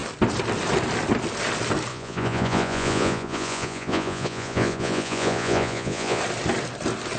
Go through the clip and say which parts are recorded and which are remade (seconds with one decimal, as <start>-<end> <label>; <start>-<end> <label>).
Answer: 0.0-1.9 recorded; 1.9-6.2 remade; 6.2-7.2 recorded